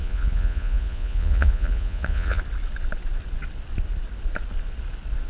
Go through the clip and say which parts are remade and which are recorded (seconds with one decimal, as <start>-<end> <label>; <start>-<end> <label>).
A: 0.0-2.4 remade; 2.4-5.3 recorded